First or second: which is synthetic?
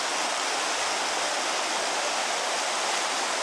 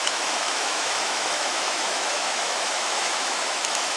second